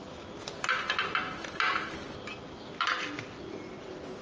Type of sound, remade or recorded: recorded